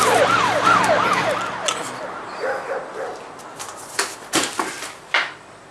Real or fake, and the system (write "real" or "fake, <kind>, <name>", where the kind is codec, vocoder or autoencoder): real